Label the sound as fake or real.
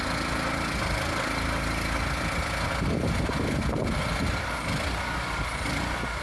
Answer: real